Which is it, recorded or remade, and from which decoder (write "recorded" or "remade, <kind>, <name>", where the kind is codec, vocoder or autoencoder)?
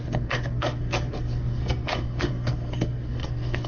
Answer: remade, codec, SNAC